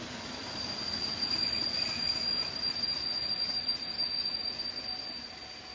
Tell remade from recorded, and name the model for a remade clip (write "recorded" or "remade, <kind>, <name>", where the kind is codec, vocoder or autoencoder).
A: recorded